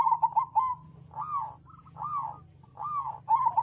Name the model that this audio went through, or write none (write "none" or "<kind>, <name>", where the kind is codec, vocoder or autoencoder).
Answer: none